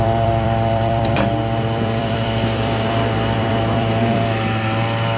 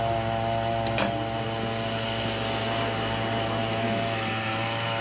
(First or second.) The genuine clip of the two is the second